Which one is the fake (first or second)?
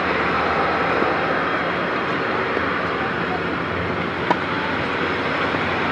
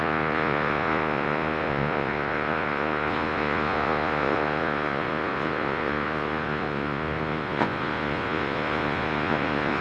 second